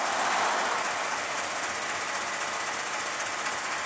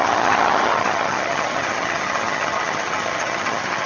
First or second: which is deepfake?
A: second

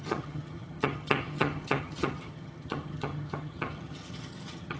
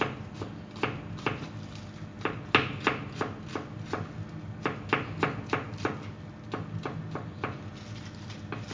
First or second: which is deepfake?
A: first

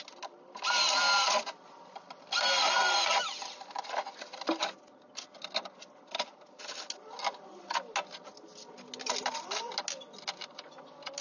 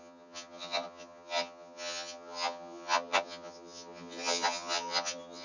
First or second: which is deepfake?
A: second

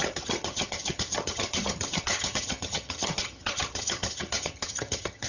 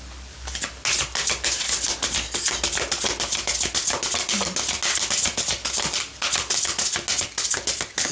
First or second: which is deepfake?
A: first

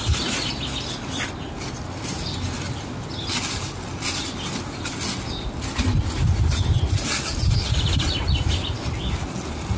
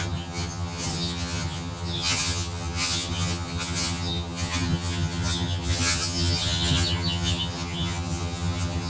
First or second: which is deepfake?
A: second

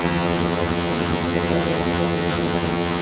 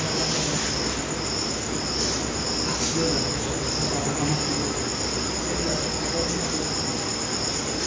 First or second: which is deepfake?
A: first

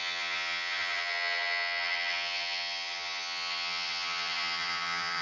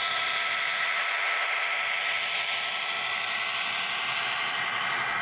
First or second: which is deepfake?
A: first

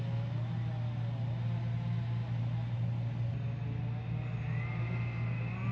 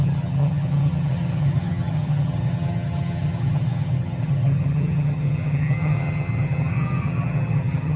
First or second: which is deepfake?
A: second